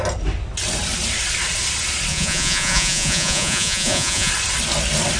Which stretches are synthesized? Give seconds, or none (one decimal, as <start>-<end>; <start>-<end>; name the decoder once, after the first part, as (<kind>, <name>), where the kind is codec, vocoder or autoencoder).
2.1-4.3 (vocoder, Vocos)